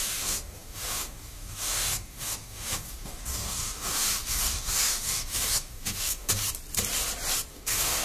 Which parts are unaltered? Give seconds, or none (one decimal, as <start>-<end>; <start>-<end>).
6.4-7.5